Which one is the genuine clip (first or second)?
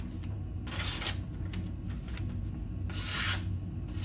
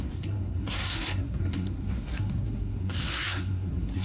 first